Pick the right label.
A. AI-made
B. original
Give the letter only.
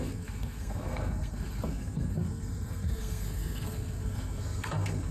A